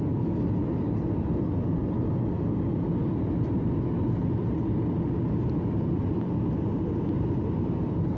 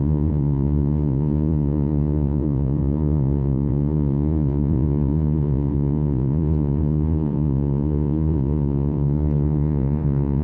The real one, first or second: first